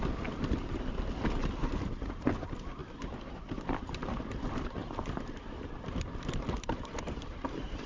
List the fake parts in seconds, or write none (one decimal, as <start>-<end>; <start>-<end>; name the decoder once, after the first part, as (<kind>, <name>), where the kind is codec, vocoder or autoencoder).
0.0-7.9 (vocoder, BigVGAN v2)